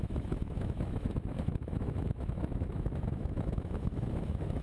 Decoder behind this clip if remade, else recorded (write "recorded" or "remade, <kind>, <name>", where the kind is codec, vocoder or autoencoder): remade, autoencoder, DAC-VAE